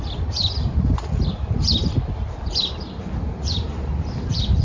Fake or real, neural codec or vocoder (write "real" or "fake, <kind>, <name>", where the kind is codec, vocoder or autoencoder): fake, vocoder, BigVGAN v2